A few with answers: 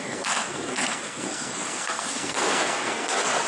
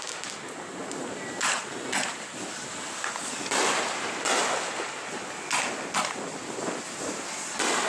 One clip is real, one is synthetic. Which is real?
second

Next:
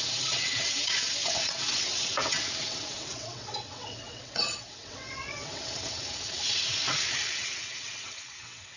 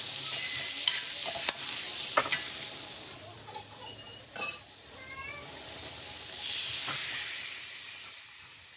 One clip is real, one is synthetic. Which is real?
second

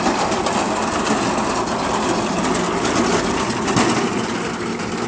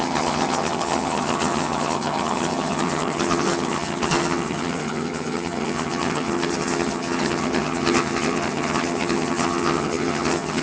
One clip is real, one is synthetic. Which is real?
first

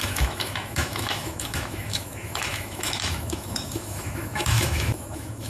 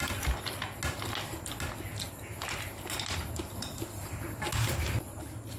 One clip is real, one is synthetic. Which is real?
second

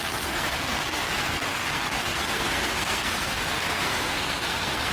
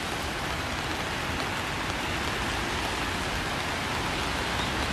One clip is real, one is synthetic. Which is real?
second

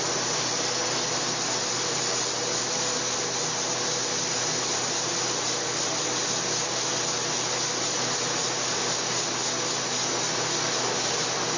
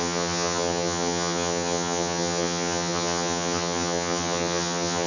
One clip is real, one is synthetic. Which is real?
first